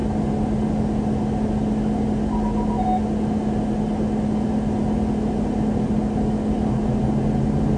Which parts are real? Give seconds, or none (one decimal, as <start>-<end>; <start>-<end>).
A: 0.0-7.8